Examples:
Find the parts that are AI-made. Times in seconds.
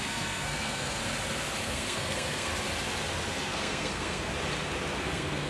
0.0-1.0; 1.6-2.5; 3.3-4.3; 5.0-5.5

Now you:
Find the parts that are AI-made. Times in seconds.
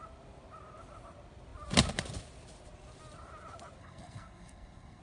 3.8-5.0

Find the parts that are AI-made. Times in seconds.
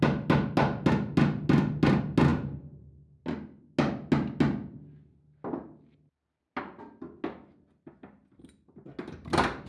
none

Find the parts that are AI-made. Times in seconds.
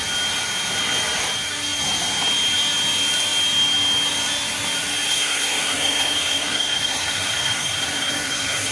5.1-8.7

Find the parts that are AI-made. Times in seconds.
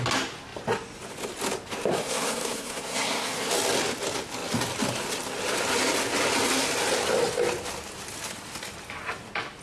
1.9-3.5